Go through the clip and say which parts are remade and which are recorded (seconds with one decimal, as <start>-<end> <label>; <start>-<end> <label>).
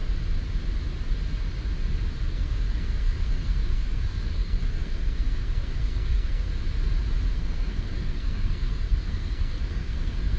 0.0-2.3 recorded; 2.3-6.5 remade; 6.5-7.3 recorded; 7.3-10.4 remade